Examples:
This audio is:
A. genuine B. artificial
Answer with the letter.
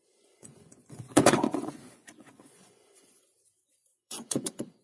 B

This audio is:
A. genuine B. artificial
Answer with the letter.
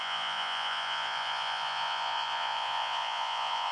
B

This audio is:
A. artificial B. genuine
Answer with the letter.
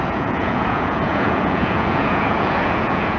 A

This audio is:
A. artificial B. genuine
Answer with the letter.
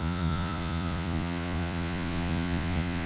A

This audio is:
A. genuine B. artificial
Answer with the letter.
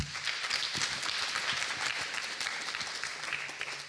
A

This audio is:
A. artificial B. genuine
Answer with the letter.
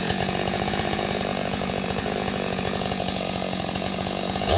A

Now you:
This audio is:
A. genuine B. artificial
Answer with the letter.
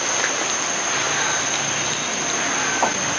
A